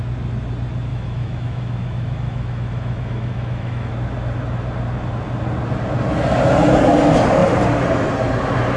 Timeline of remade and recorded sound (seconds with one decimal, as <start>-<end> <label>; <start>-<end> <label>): 0.0-0.9 recorded; 0.9-3.9 remade; 3.9-8.8 recorded